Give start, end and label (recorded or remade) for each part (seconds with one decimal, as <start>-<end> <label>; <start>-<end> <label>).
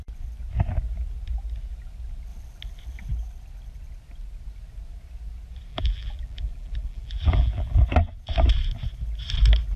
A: 0.0-5.7 recorded; 5.7-7.8 remade; 7.8-9.8 recorded